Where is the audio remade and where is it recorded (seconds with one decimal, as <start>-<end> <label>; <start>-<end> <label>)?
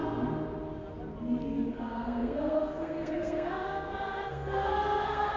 0.0-1.7 recorded; 1.7-5.4 remade